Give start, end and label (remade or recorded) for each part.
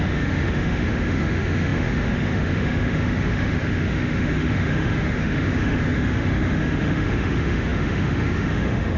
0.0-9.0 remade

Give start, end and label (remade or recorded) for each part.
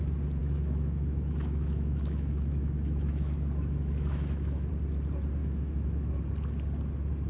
0.0-0.4 recorded; 0.4-4.7 remade; 4.7-5.4 recorded; 5.4-6.2 remade; 6.2-7.3 recorded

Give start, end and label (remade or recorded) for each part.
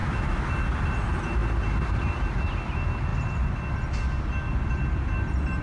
0.0-0.5 remade; 0.5-5.6 recorded